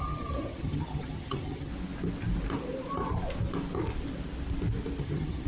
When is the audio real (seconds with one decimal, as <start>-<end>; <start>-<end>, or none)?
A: 1.7-5.0